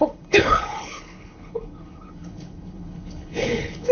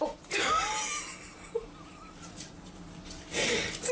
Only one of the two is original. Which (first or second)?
second